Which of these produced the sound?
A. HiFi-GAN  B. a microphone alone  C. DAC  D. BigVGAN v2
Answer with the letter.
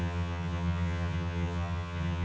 A